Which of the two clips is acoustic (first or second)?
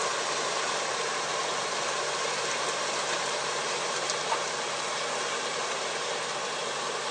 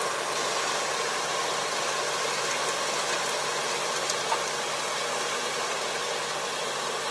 second